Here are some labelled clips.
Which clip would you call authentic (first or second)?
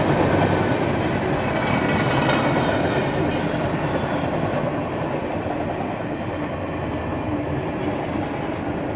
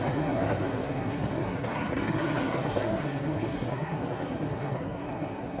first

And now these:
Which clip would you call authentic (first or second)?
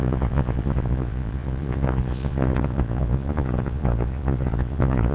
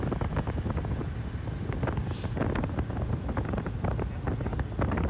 second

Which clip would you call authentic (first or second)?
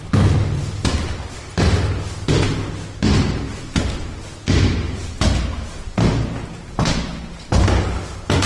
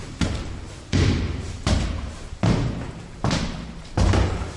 first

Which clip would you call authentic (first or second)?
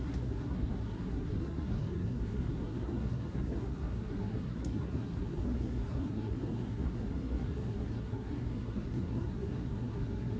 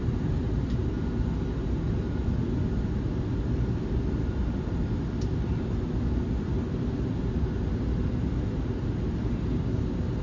second